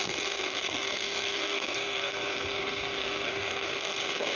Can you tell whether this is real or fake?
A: fake